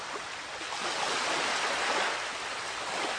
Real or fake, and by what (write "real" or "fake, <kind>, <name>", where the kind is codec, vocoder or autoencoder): real